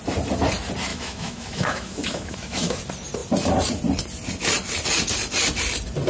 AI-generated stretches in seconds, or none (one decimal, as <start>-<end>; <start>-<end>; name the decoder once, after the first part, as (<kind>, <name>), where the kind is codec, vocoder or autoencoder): 0.9-2.8 (autoencoder, DAC-VAE)